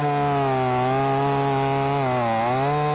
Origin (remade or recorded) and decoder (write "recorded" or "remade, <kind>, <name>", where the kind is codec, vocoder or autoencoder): recorded